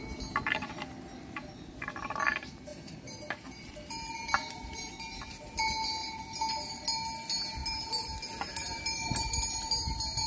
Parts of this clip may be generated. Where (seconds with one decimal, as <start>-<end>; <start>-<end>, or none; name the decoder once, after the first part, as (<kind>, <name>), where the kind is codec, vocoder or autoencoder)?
2.7-4.9 (vocoder, BigVGAN v2)